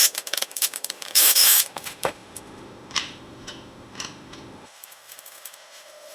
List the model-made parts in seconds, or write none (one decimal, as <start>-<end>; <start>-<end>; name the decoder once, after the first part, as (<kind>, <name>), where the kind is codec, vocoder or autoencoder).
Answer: 0.0-6.1 (autoencoder, DAC-VAE)